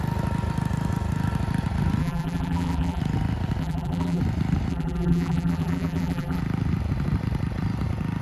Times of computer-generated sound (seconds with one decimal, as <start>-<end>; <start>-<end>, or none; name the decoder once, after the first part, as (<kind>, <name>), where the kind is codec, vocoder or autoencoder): 2.0-3.0 (vocoder, BigVGAN v2); 3.6-4.2; 4.7-6.4

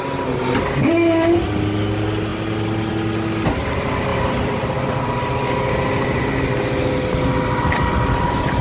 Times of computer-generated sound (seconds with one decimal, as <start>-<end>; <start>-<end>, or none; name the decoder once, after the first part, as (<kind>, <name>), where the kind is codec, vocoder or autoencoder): 4.1-4.9 (vocoder, BigVGAN v2)

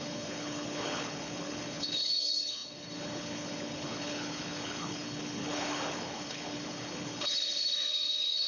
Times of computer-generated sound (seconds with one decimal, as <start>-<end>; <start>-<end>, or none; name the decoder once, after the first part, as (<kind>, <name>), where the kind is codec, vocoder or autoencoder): 0.0-8.5 (codec, HILCodec)

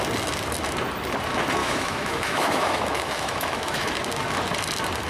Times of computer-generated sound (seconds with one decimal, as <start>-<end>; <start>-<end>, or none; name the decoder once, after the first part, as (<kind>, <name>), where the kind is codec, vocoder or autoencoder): 1.6-3.9 (autoencoder, DAC-VAE)

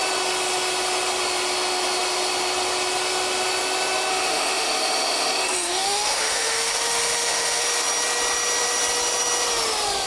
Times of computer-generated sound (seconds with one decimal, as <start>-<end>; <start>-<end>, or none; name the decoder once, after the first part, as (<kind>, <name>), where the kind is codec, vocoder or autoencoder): 4.1-7.6 (autoencoder, DAC-VAE)

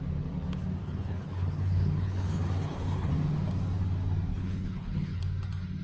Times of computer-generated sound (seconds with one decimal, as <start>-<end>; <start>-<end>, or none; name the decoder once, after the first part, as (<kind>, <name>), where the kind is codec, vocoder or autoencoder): 0.8-3.1 (codec, HILCodec); 4.3-5.2

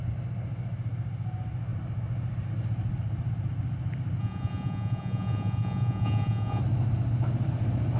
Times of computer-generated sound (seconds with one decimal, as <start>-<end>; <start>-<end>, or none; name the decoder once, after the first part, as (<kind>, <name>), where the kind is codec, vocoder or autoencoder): 4.2-6.6 (vocoder, Vocos)